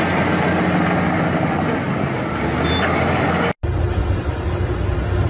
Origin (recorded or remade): recorded